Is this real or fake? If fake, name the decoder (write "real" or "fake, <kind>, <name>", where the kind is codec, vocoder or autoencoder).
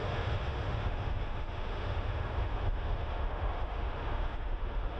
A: fake, autoencoder, DAC-VAE